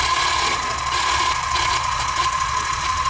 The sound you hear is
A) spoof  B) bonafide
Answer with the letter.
A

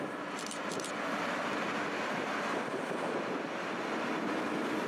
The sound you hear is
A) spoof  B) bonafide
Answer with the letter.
B